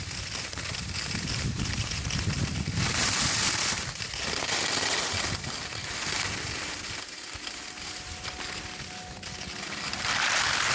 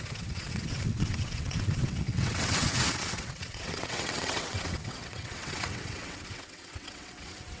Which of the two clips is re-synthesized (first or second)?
second